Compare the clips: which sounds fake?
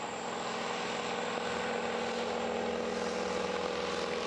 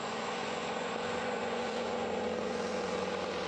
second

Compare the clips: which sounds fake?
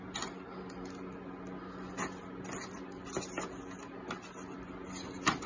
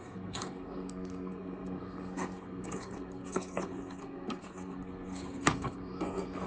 second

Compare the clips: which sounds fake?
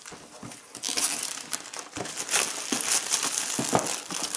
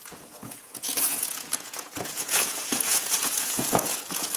second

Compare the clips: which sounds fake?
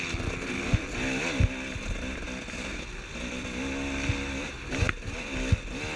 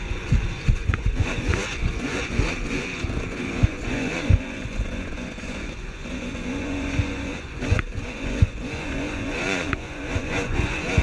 second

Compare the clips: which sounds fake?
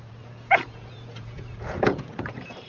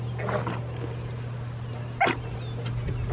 first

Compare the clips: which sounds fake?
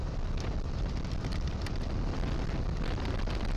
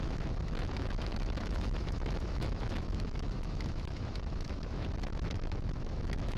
second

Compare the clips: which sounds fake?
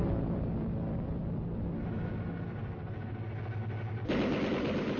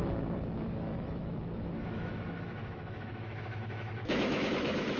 second